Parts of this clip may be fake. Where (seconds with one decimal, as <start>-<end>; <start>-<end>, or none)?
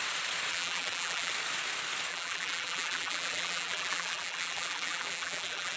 0.5-1.3; 2.1-5.8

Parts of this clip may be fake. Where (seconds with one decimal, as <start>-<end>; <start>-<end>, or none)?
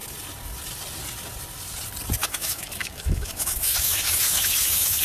2.2-5.0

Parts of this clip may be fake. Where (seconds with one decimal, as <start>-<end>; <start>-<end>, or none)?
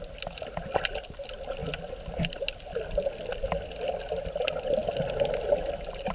none